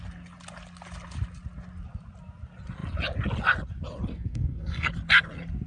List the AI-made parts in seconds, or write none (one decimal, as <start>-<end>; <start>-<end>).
4.1-4.9